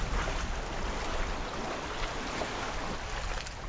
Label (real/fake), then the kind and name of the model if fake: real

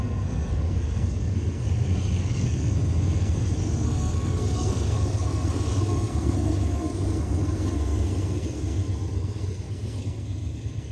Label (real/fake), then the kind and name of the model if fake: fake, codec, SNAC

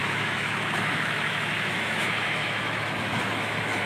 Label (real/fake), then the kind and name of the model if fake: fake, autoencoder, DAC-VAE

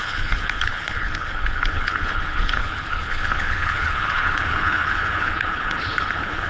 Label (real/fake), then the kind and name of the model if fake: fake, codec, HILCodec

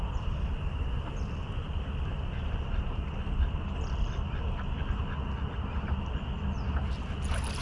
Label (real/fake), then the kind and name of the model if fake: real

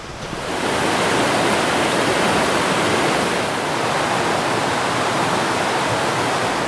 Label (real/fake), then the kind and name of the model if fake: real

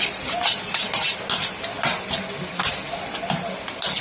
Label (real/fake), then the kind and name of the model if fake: real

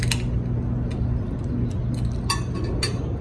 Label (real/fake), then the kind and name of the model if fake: real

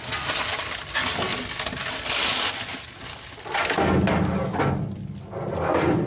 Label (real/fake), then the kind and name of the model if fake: real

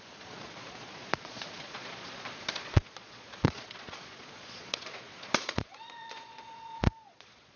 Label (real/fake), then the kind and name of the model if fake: fake, vocoder, Vocos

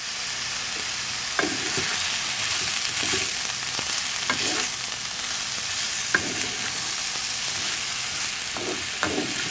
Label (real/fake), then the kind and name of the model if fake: real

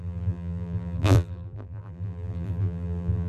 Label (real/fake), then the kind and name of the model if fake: fake, vocoder, BigVGAN v2